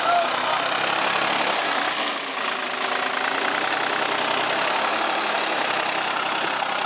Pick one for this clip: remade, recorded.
recorded